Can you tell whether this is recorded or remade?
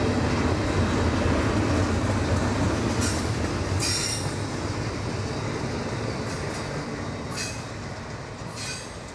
recorded